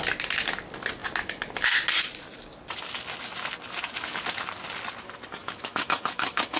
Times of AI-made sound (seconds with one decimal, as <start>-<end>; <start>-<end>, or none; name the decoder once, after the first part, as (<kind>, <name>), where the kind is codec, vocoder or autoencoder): 5.4-6.6 (autoencoder, DAC-VAE)